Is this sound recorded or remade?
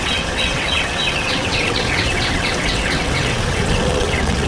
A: remade